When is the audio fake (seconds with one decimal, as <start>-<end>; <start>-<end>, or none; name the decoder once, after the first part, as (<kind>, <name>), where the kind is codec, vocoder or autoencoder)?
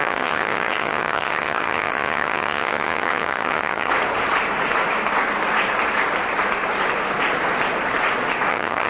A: 0.0-3.9 (vocoder, HiFi-GAN); 8.5-8.9